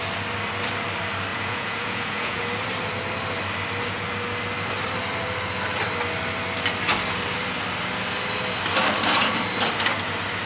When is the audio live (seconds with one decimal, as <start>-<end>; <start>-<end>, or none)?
0.0-1.3; 2.4-10.5